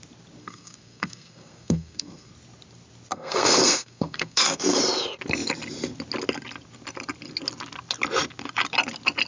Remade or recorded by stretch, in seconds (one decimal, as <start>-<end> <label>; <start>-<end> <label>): 0.0-0.4 recorded; 0.4-2.3 remade; 2.3-3.1 recorded; 3.1-4.8 remade; 4.8-9.3 recorded